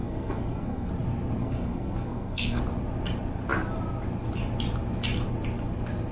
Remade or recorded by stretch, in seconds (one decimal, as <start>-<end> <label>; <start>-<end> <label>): 0.0-0.9 remade; 0.9-1.4 recorded; 1.4-2.6 remade; 2.6-6.1 recorded